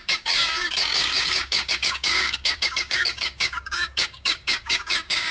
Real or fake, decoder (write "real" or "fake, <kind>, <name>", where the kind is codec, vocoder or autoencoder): fake, codec, DAC